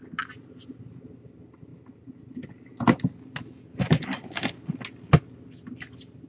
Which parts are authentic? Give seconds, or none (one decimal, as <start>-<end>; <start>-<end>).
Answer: 0.0-6.3